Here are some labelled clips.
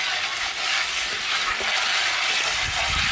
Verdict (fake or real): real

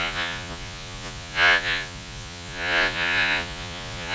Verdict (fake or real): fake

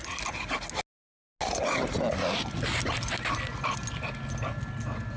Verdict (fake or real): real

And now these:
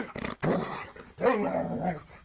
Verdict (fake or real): real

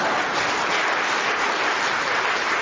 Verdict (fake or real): real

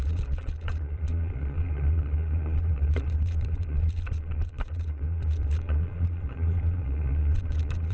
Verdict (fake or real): fake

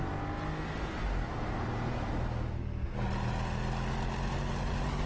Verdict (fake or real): real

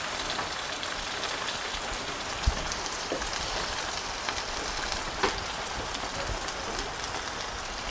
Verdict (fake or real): fake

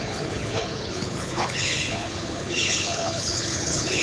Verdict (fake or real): fake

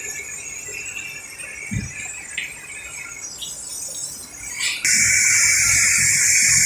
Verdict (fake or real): real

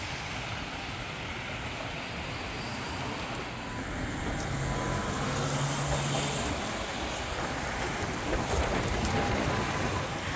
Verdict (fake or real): real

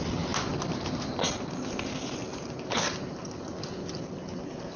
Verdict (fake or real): real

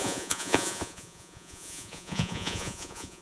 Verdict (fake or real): fake